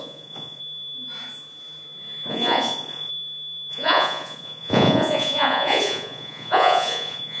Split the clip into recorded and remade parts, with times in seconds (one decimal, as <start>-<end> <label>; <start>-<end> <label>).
0.0-0.6 remade; 0.6-2.3 recorded; 2.3-3.1 remade; 3.1-3.7 recorded; 3.7-7.4 remade